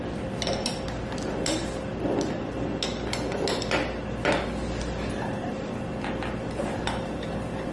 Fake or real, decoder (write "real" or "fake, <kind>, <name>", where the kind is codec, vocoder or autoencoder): real